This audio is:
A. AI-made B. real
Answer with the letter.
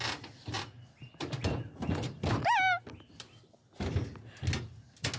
B